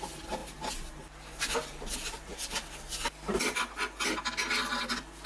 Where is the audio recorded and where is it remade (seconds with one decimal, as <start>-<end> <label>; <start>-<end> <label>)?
0.0-2.3 recorded; 2.3-2.8 remade; 2.8-5.3 recorded